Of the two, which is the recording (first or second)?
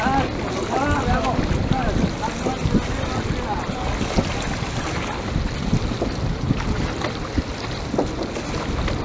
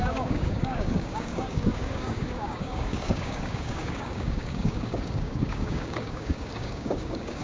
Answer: first